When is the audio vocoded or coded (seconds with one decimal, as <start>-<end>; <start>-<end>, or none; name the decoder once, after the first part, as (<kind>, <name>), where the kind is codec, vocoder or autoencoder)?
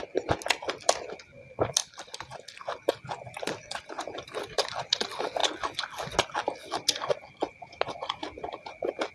none